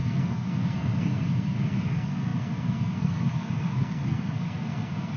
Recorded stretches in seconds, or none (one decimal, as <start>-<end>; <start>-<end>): none